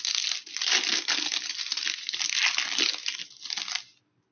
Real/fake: real